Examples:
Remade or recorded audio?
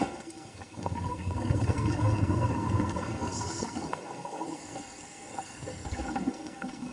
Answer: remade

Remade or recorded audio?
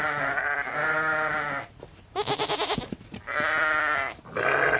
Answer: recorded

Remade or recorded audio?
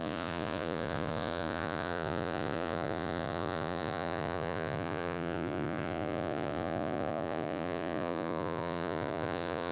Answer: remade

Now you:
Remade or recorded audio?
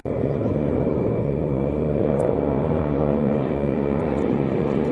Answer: remade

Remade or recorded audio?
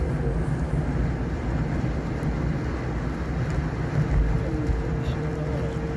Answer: recorded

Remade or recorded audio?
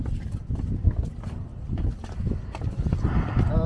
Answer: recorded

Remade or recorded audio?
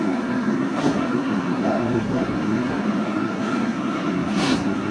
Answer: remade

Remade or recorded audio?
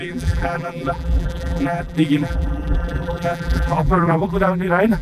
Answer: remade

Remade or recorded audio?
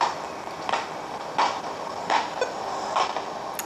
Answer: recorded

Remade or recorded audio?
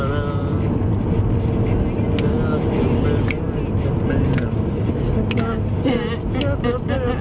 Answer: recorded